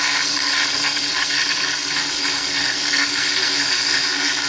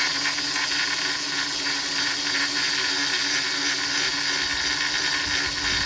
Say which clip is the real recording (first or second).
second